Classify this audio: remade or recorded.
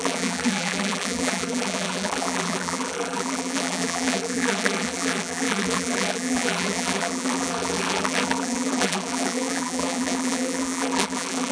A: remade